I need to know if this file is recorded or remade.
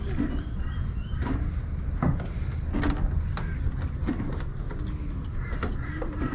recorded